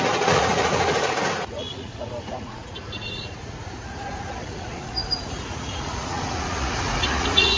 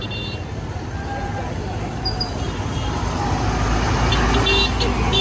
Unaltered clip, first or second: second